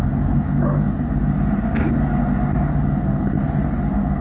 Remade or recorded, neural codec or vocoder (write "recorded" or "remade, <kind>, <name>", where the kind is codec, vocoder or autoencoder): recorded